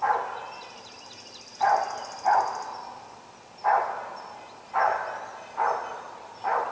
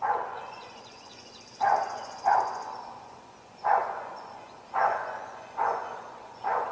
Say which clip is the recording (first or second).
first